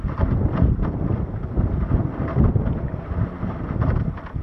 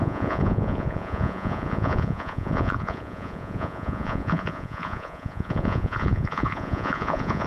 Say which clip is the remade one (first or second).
second